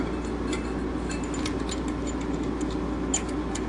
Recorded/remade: recorded